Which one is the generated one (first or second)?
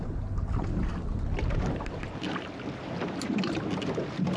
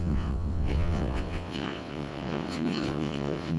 second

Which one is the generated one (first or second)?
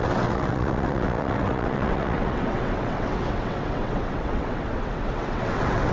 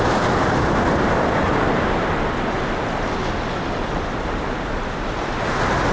first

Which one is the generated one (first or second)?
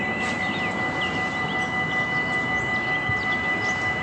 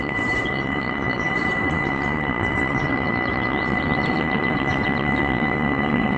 second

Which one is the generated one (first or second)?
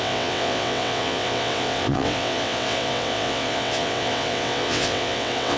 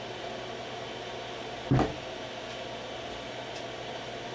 first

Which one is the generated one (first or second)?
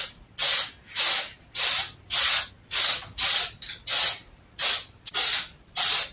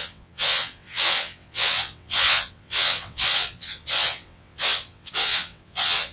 second